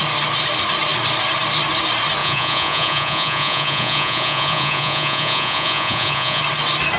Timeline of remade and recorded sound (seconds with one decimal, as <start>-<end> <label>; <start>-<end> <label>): 0.0-2.2 recorded; 2.2-6.4 remade; 6.4-7.0 recorded